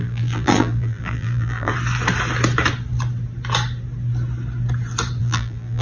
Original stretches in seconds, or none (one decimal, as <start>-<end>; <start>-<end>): 1.7-5.2